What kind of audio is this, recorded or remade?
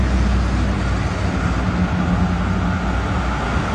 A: recorded